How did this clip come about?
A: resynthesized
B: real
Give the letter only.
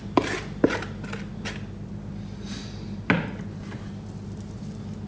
B